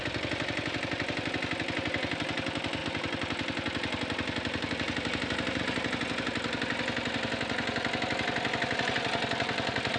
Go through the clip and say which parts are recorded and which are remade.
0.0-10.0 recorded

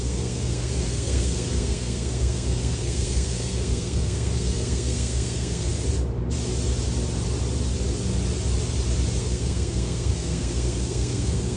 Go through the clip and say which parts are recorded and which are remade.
0.0-5.7 remade; 5.7-9.2 recorded; 9.2-11.6 remade

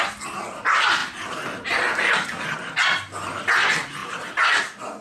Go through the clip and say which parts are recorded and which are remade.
0.0-5.0 recorded